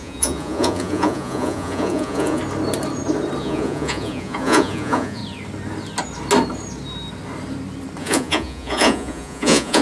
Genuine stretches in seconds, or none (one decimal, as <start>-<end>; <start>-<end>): 2.4-3.4; 5.2-8.0